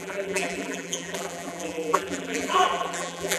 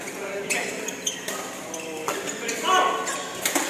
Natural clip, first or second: second